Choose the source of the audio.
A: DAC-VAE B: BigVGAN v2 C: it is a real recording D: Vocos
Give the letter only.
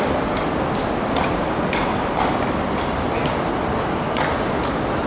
C